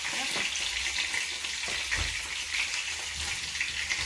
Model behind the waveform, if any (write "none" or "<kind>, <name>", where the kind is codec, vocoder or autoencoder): none